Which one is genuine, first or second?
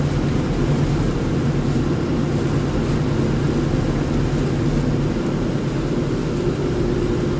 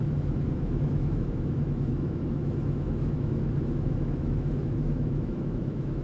first